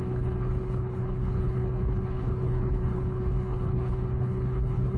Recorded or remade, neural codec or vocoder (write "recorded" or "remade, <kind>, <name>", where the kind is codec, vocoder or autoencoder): remade, codec, HILCodec